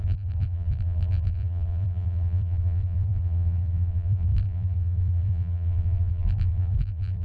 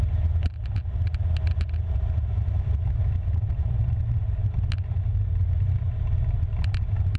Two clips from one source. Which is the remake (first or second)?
first